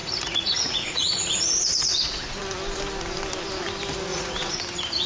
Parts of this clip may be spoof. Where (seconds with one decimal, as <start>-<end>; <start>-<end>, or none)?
0.0-2.4; 4.1-4.6